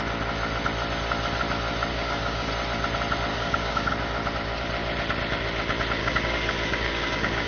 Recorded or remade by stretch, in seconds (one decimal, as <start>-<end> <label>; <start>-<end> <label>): 0.0-1.9 recorded; 1.9-2.5 remade; 2.5-3.3 recorded; 3.3-3.9 remade; 3.9-6.0 recorded; 6.0-7.5 remade